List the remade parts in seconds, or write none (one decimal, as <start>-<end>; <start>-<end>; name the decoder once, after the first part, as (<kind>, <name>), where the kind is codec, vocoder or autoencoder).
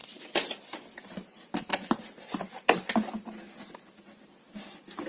none